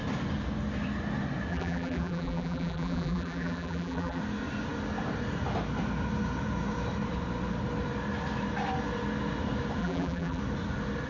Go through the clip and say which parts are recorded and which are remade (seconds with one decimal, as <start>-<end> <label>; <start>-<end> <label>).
0.0-1.5 recorded; 1.5-4.2 remade; 4.2-9.8 recorded; 9.8-10.4 remade; 10.4-11.1 recorded